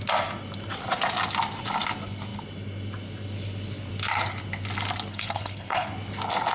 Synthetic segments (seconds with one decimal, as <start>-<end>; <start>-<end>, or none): 5.1-5.9